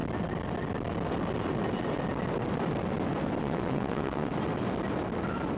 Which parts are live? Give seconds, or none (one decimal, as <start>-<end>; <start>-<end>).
0.0-3.4; 4.3-5.6